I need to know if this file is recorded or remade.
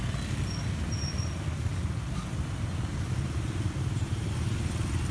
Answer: recorded